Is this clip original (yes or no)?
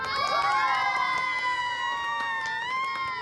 yes